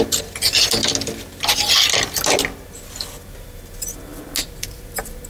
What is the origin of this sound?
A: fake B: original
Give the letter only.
B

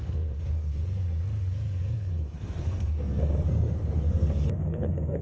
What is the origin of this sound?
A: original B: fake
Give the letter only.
B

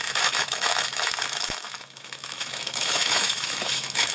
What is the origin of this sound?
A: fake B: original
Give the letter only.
A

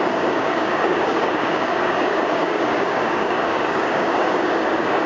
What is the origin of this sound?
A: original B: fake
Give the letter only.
B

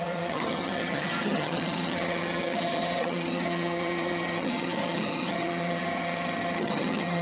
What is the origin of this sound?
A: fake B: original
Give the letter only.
A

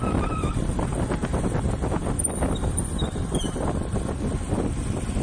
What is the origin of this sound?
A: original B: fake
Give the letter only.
A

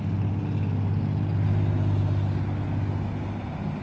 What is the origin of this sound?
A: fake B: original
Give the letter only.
B